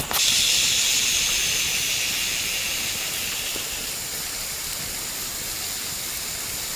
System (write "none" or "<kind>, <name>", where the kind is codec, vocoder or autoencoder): none